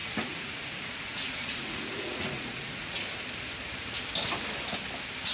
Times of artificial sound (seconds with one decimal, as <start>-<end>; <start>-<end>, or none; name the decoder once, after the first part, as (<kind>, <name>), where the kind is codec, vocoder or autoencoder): 0.0-3.2 (vocoder, Vocos)